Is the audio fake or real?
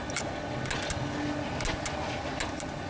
real